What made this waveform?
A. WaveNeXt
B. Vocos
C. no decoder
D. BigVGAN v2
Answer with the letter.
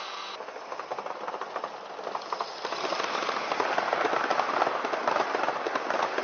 C